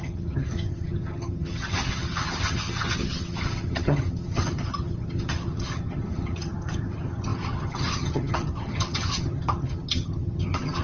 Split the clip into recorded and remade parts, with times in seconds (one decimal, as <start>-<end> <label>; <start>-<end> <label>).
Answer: 0.0-10.8 remade